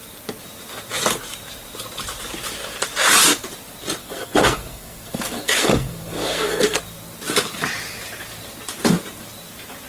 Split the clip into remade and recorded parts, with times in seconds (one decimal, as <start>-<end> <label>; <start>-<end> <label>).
0.0-4.0 recorded; 4.0-6.8 remade; 6.8-9.9 recorded